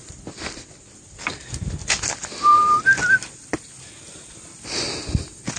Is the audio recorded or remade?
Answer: recorded